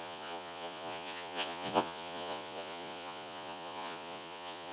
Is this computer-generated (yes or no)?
yes